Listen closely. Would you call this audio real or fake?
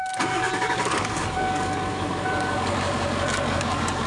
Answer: fake